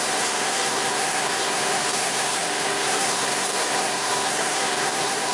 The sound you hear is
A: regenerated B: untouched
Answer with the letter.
A